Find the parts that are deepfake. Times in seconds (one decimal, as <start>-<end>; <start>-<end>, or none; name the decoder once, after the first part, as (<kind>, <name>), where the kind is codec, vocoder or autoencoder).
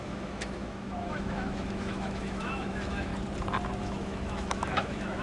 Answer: 0.0-3.1 (autoencoder, DAC-VAE); 3.8-5.2